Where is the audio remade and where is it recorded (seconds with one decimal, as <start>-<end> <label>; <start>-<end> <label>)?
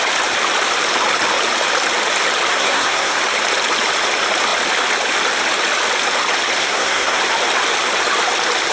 0.0-2.5 recorded; 2.5-3.2 remade; 3.2-6.6 recorded; 6.6-7.2 remade; 7.2-8.7 recorded